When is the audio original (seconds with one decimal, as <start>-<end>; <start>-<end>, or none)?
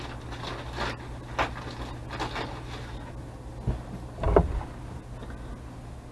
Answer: 0.0-6.1